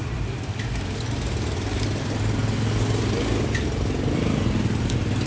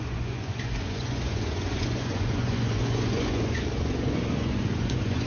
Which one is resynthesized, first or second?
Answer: second